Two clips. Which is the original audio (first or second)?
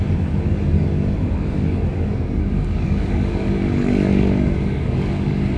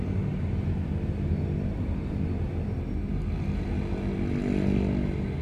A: second